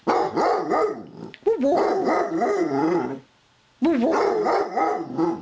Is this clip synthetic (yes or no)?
no